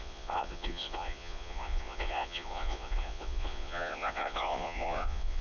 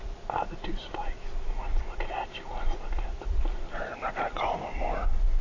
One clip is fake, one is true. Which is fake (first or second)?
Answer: first